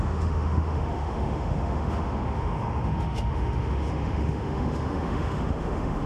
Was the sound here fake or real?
fake